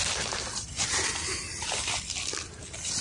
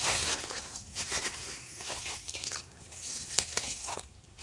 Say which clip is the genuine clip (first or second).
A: first